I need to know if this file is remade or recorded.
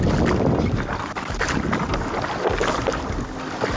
recorded